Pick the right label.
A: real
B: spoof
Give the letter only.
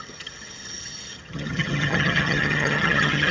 B